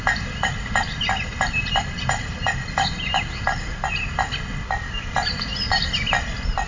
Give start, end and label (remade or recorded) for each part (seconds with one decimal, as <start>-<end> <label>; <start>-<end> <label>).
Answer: 0.0-1.3 recorded; 1.3-2.7 remade; 2.7-6.7 recorded